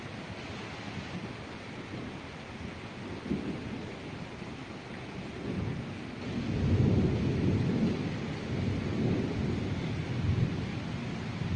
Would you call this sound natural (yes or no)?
yes